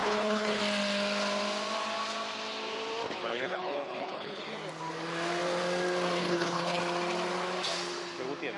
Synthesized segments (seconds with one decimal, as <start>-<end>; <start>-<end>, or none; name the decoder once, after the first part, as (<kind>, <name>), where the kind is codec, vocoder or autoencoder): 0.0-0.6 (codec, HILCodec); 3.3-4.4; 6.2-6.8